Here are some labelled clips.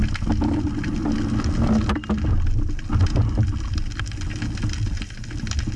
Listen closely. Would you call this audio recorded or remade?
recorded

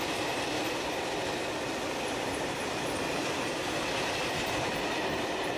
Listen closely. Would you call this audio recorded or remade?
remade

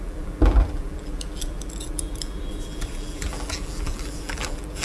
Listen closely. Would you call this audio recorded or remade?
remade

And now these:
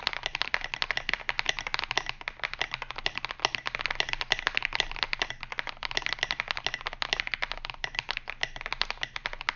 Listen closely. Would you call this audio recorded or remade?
recorded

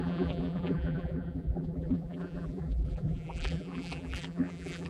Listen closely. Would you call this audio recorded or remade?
remade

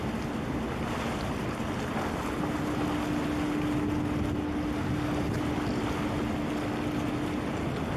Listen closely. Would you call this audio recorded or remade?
recorded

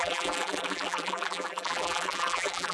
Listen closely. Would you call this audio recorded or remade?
remade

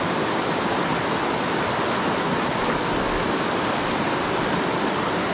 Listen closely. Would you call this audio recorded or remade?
recorded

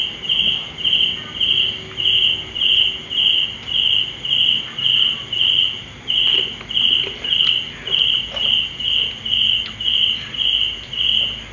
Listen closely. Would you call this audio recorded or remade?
recorded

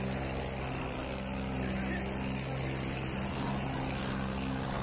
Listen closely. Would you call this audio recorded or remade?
recorded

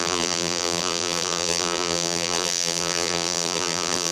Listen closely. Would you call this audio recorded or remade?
remade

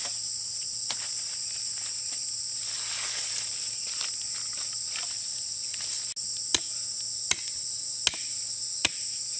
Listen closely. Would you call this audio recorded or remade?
recorded